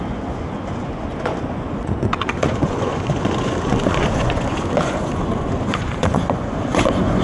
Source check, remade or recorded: remade